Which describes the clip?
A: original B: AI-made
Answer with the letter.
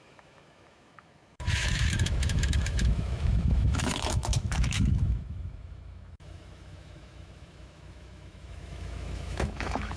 B